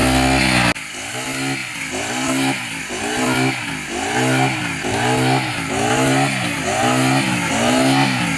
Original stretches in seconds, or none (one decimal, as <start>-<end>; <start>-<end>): 0.0-1.6; 2.8-8.4

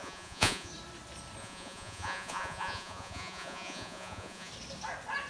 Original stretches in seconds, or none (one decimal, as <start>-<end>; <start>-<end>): 0.7-1.4; 4.5-5.3